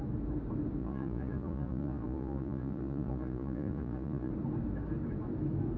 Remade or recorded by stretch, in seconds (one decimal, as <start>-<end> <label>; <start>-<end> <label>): 0.0-0.8 recorded; 0.8-4.3 remade; 4.3-5.8 recorded